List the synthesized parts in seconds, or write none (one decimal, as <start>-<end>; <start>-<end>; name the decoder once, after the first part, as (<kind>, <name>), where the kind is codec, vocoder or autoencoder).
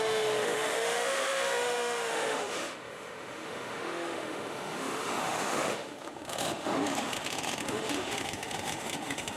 0.0-9.4 (autoencoder, DAC-VAE)